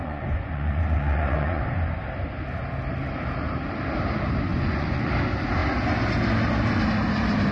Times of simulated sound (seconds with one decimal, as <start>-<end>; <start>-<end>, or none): 0.0-1.6; 4.5-5.1